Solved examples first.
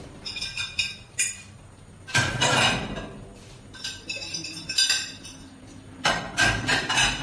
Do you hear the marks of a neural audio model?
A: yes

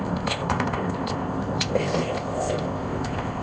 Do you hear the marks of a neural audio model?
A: yes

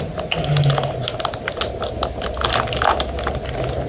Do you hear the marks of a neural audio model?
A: no